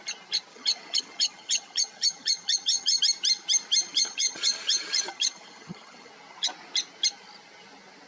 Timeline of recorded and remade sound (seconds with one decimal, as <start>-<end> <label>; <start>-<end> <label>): 0.0-0.5 recorded; 0.5-3.0 remade; 3.0-3.8 recorded; 3.8-6.1 remade; 6.1-8.1 recorded